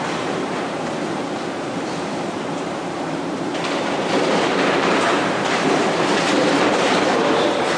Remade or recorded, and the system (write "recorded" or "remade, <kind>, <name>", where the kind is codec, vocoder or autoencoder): remade, vocoder, BigVGAN v2